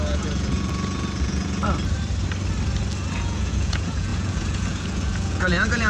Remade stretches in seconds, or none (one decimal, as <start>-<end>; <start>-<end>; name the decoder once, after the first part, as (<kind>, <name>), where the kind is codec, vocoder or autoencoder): 0.0-1.6 (vocoder, Vocos); 3.1-5.9